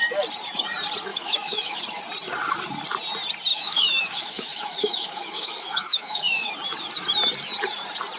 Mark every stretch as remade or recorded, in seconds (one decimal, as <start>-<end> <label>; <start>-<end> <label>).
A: 0.0-1.1 recorded; 1.1-1.8 remade; 1.8-3.5 recorded; 3.5-6.5 remade; 6.5-8.2 recorded

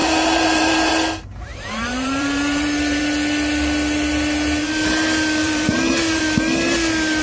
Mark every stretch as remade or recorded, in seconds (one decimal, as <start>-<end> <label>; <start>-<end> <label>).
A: 0.0-0.9 remade; 0.9-1.5 recorded; 1.5-3.0 remade; 3.0-5.4 recorded; 5.4-6.2 remade; 6.2-7.2 recorded

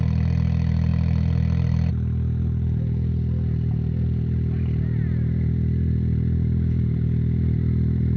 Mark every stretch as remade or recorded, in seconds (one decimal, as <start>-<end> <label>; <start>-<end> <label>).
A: 0.0-8.2 recorded

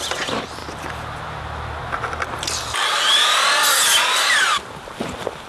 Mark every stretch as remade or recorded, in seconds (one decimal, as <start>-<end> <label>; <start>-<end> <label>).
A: 0.0-5.5 recorded

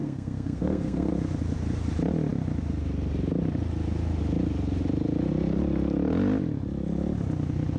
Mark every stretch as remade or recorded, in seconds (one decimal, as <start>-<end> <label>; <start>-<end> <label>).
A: 0.0-1.1 remade; 1.1-7.8 recorded

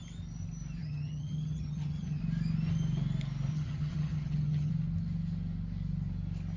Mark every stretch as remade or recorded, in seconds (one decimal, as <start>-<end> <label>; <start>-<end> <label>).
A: 0.0-0.8 recorded; 0.8-2.2 remade; 2.2-3.5 recorded; 3.5-4.7 remade; 4.7-6.6 recorded

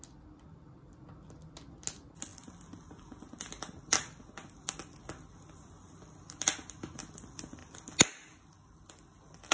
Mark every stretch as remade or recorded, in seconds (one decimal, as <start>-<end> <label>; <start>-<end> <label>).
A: 0.0-9.5 recorded

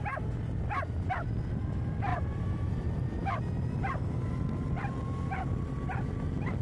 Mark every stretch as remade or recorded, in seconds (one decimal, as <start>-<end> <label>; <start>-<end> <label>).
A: 0.0-2.1 recorded; 2.1-2.7 remade; 2.7-6.6 recorded